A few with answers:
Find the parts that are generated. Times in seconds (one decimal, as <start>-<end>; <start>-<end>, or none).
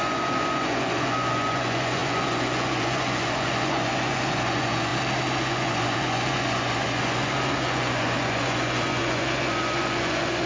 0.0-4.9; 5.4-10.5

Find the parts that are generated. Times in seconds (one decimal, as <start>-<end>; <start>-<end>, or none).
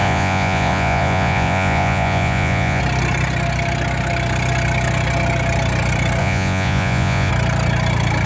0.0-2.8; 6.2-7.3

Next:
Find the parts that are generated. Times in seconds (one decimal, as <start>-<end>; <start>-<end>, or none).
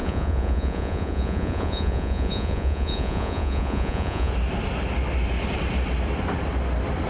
0.0-4.3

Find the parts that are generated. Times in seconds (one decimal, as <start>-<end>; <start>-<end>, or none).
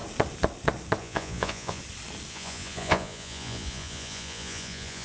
1.0-1.8; 2.3-5.0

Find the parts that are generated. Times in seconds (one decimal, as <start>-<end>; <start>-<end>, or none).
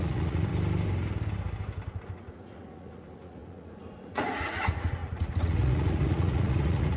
0.0-0.5; 1.9-7.0